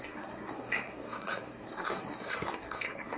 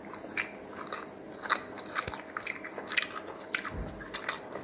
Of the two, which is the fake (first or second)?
first